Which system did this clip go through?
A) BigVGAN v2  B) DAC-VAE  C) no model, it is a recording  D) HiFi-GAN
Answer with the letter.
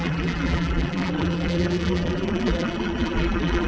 A